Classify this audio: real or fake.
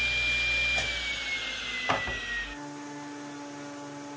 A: real